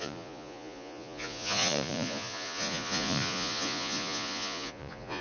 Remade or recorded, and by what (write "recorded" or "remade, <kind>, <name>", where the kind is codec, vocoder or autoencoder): remade, vocoder, Vocos